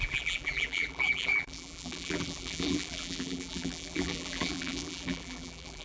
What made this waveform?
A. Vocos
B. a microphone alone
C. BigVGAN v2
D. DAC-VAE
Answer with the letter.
C